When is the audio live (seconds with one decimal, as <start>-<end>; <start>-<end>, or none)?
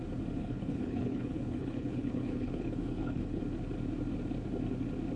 0.0-0.4; 3.4-5.2